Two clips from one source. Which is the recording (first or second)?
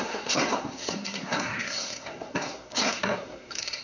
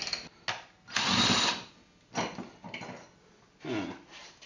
second